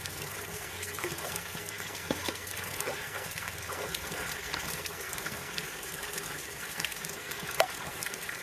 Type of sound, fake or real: fake